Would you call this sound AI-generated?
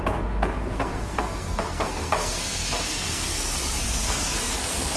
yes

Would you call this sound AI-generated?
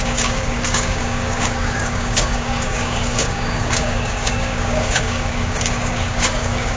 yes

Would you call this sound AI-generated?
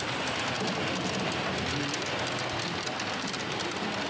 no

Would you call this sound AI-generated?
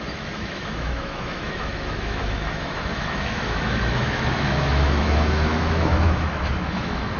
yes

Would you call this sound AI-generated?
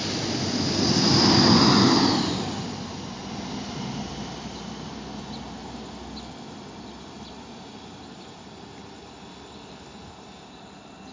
no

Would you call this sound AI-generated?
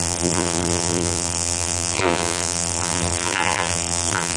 yes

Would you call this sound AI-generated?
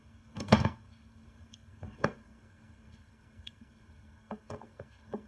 yes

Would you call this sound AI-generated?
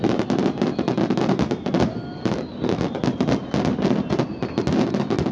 no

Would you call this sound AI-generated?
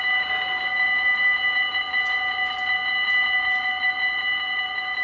no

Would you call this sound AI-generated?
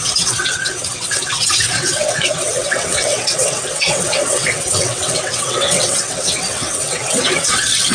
yes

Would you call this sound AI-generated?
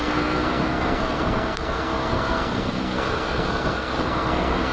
yes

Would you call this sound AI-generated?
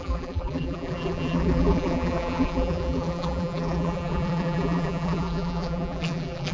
yes